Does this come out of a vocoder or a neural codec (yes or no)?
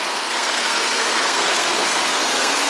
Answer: yes